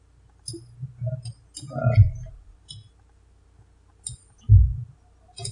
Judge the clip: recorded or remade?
recorded